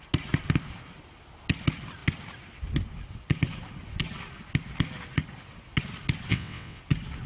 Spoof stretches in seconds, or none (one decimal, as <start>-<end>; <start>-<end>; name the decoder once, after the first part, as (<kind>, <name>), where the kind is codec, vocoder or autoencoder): 6.3-6.8 (vocoder, WaveNeXt)